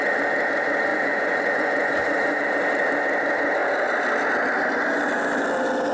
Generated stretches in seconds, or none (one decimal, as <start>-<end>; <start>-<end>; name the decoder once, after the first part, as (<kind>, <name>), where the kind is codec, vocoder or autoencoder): 0.9-2.4 (vocoder, Vocos)